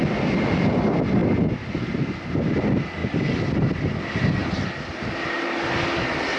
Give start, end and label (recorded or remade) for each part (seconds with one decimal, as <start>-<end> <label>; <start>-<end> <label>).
0.0-6.4 recorded